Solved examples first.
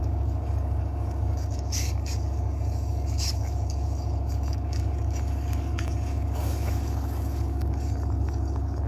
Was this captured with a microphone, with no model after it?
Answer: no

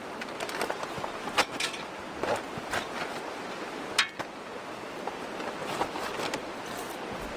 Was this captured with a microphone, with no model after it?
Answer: yes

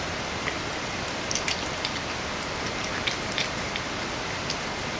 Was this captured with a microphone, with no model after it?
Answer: yes